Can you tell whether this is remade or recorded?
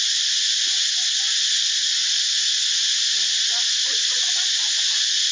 recorded